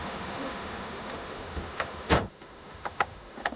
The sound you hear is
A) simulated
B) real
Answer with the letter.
A